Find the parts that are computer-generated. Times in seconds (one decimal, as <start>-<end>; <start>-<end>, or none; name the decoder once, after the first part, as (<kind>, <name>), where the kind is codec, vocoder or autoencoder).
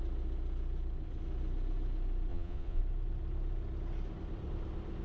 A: 2.3-2.8 (vocoder, Vocos)